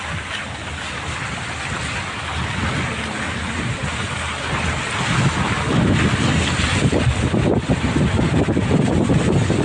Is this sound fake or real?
real